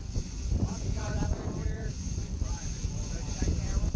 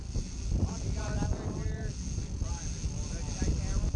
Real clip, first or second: second